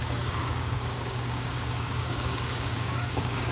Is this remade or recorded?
remade